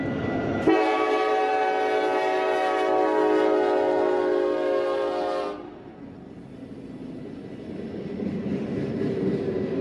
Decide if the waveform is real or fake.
real